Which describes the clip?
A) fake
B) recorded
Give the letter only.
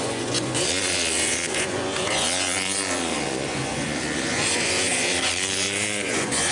A